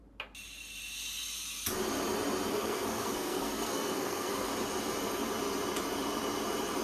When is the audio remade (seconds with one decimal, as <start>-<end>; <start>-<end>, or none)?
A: 2.5-4.5

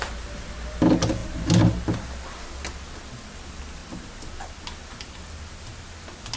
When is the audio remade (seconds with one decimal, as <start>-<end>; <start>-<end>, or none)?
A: none

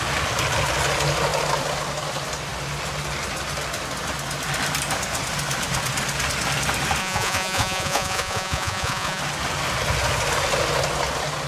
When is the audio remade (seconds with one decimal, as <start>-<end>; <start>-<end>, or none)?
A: 7.0-9.2

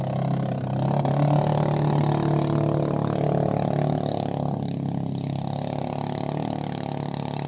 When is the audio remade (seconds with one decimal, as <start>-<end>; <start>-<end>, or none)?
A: none

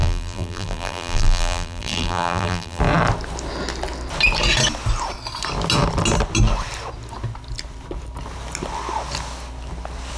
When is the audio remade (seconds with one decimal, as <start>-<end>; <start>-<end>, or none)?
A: 0.0-2.8

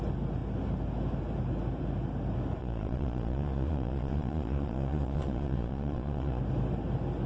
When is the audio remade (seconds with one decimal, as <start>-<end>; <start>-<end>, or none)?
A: 2.6-6.4

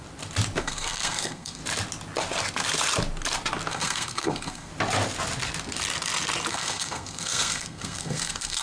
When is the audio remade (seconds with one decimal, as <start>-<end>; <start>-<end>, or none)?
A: 0.6-1.6; 3.7-4.7; 6.5-8.6